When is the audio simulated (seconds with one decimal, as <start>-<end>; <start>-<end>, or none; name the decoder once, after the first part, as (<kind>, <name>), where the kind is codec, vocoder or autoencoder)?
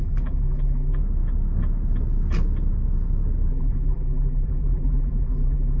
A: 0.0-1.0 (vocoder, BigVGAN v2); 3.5-5.8